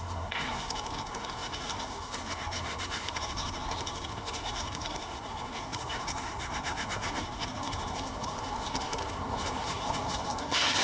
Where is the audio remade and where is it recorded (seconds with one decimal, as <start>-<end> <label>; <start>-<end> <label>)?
0.0-10.8 remade